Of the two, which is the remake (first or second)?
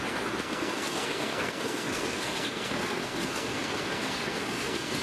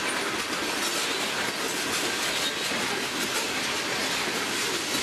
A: first